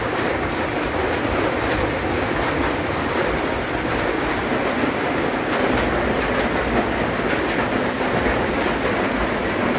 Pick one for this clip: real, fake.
real